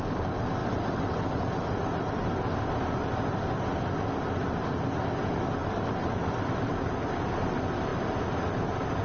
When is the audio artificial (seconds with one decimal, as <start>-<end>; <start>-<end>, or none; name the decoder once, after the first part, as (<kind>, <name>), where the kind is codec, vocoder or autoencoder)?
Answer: 0.6-2.1 (vocoder, BigVGAN v2); 5.6-6.7